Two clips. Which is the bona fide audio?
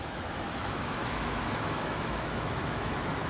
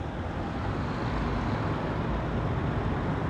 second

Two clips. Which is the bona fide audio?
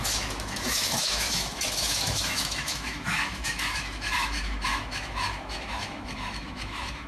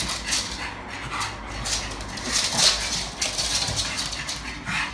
second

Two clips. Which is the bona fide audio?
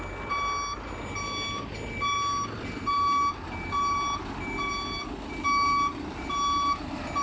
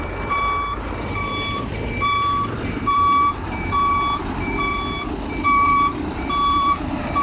first